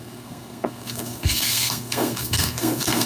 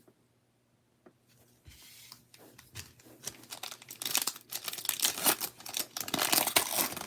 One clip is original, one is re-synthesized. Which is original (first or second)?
second